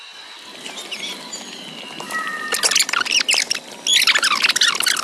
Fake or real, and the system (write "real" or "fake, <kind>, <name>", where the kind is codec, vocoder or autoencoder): real